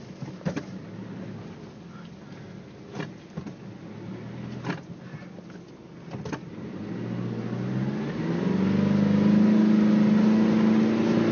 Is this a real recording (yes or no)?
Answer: yes